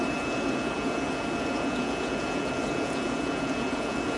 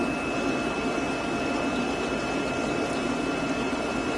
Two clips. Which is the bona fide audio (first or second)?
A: second